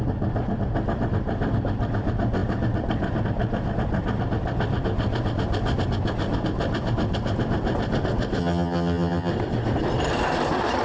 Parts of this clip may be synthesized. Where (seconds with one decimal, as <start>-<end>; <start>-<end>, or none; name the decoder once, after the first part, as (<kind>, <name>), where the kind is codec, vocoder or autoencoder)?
8.4-9.3 (vocoder, HiFi-GAN)